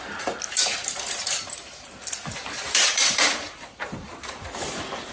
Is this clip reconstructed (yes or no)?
no